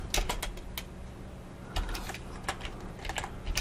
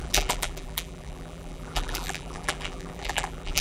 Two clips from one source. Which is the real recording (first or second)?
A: first